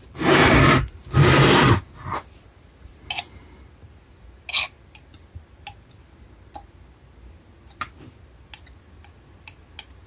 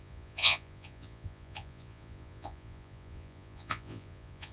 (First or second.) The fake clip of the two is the second